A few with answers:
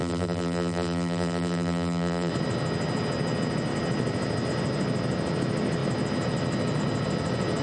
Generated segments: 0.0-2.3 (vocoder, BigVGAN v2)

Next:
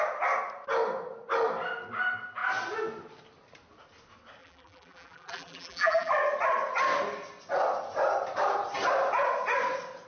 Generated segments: 4.4-6.1 (vocoder, BigVGAN v2)

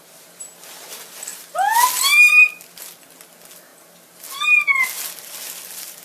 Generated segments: none

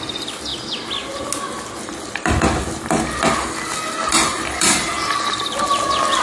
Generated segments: 4.3-5.1 (vocoder, BigVGAN v2)

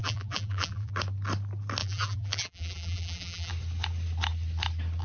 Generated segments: 0.0-0.9 (vocoder, BigVGAN v2); 1.8-3.5